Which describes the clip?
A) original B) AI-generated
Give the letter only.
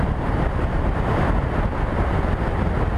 A